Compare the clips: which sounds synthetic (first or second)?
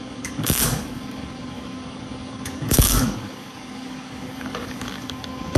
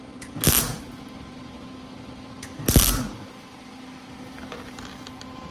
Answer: first